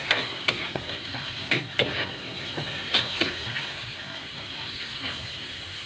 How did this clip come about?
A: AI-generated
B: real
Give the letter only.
A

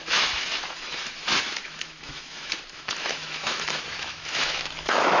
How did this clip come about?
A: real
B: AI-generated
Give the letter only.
B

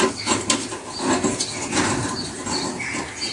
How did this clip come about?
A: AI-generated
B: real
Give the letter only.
B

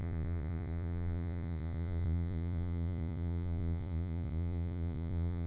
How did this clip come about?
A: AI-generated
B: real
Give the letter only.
A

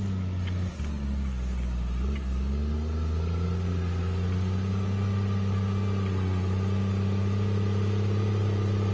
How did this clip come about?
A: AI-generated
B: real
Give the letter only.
B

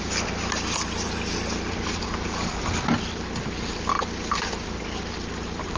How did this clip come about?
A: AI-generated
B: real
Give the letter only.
B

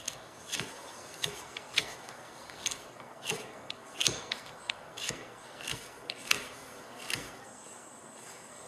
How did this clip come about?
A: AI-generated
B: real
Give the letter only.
A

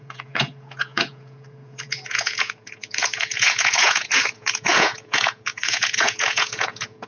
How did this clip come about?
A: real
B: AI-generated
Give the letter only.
B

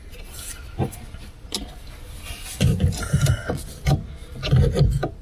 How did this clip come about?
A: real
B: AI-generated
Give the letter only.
A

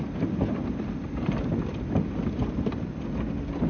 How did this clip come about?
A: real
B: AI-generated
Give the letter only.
A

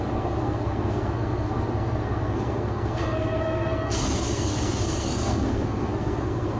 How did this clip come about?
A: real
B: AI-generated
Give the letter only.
B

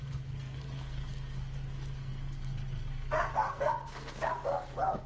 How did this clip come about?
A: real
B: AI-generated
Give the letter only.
B